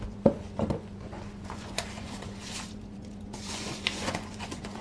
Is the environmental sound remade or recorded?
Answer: remade